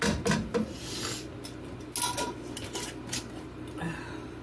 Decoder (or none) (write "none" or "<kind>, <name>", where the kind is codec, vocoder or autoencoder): none